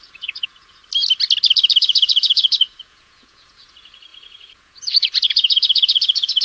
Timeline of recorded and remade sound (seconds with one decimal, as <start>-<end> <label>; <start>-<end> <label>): 0.0-0.8 remade; 0.8-1.8 recorded; 1.8-6.4 remade